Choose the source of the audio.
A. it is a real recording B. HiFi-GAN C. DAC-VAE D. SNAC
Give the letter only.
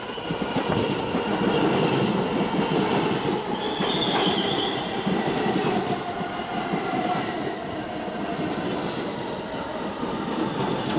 A